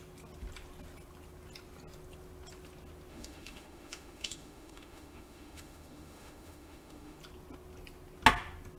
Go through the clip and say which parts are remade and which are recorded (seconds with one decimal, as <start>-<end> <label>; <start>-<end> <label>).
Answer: 0.0-3.1 recorded; 3.1-7.2 remade; 7.2-8.8 recorded

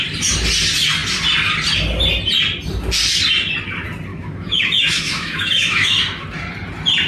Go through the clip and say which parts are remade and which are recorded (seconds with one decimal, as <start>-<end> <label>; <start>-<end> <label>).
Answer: 0.0-4.1 recorded; 4.1-5.9 remade; 5.9-7.1 recorded

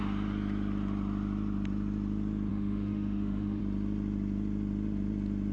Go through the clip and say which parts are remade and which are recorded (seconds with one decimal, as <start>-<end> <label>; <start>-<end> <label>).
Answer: 0.0-2.5 recorded; 2.5-3.6 remade; 3.6-5.5 recorded

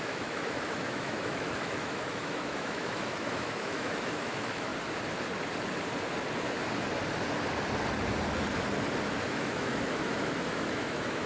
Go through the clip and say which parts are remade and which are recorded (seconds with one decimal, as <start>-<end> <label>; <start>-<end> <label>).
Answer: 0.0-4.7 remade; 4.7-9.3 recorded; 9.3-11.3 remade

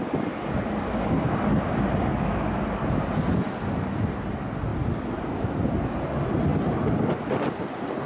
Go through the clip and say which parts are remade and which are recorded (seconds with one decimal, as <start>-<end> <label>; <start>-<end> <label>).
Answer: 0.0-2.1 recorded; 2.1-2.6 remade; 2.6-8.1 recorded

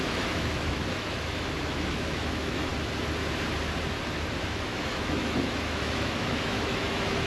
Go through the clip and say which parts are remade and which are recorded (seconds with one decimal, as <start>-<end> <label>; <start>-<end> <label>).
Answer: 0.0-2.7 remade; 2.7-4.4 recorded; 4.4-7.3 remade